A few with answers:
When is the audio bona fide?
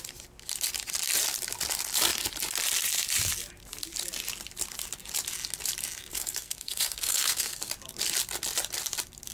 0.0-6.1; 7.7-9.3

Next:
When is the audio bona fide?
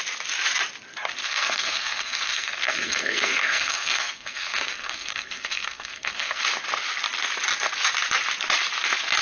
0.0-1.2; 6.4-9.2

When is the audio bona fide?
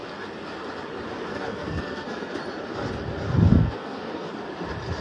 0.0-1.3; 2.3-3.5; 4.3-5.0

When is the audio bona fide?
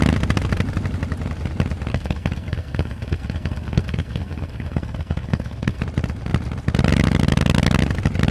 0.0-1.9; 5.8-8.3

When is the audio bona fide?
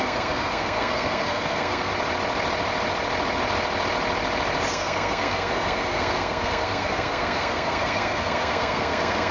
1.9-4.7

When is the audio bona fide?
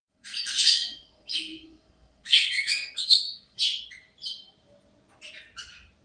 3.6-6.0